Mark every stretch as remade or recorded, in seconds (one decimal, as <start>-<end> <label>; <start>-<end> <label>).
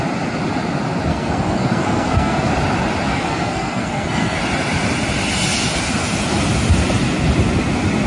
0.0-1.1 recorded; 1.1-2.5 remade; 2.5-3.1 recorded; 3.1-4.4 remade; 4.4-8.1 recorded